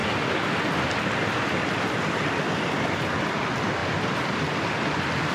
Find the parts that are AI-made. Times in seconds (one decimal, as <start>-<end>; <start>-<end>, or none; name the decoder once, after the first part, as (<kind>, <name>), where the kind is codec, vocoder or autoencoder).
3.8-5.3 (vocoder, BigVGAN v2)